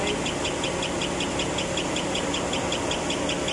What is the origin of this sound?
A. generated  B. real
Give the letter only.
B